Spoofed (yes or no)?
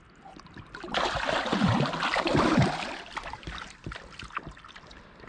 no